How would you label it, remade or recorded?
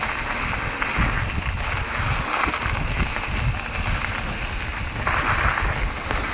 recorded